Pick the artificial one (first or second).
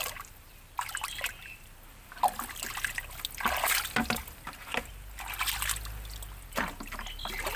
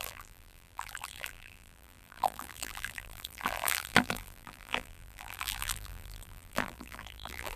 second